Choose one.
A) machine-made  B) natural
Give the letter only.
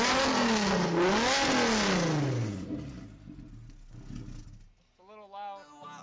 B